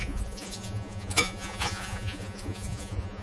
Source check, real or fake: fake